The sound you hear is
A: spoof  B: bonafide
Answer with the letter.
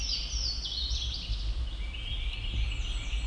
B